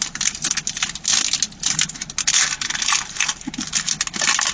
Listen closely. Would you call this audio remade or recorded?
recorded